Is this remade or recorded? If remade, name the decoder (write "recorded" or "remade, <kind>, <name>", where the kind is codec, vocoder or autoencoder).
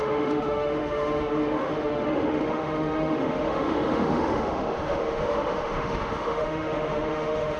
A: remade, autoencoder, DAC-VAE